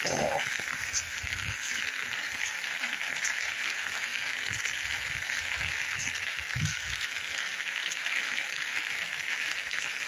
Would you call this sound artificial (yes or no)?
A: yes